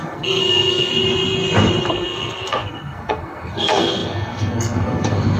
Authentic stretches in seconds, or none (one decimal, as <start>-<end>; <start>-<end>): 0.9-1.9